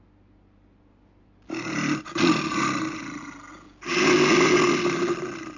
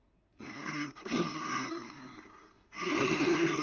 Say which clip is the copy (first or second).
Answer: second